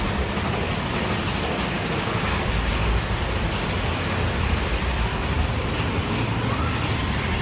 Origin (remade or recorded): recorded